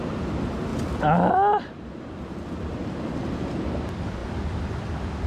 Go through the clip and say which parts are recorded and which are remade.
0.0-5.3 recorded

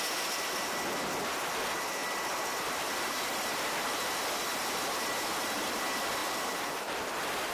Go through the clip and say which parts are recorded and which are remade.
0.0-7.5 recorded

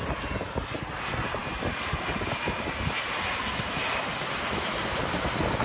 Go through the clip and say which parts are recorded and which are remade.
0.0-1.4 recorded; 1.4-2.2 remade; 2.2-5.6 recorded

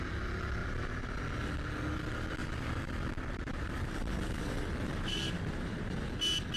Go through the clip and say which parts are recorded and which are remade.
0.0-0.6 recorded; 0.6-1.2 remade; 1.2-2.4 recorded; 2.4-6.1 remade; 6.1-6.6 recorded